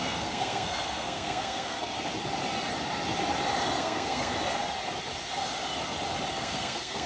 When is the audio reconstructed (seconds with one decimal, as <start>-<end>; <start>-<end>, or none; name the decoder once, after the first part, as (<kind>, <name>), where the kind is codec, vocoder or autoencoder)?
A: 0.0-1.9 (codec, SNAC); 3.8-4.3; 6.3-7.1